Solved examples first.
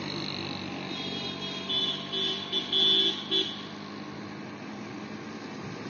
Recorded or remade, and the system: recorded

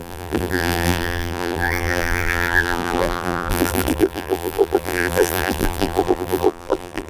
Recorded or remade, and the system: remade, vocoder, BigVGAN v2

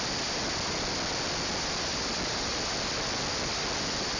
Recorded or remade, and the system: recorded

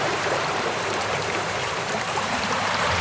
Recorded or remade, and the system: remade, vocoder, BigVGAN v2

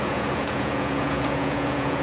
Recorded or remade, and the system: remade, vocoder, Vocos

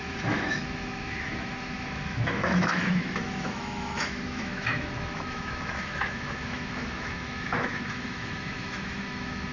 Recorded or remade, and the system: remade, autoencoder, DAC-VAE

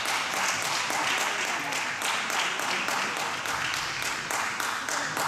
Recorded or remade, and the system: recorded